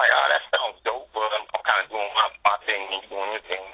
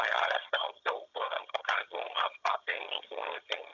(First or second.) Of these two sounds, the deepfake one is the second